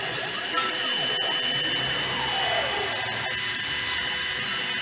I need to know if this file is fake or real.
real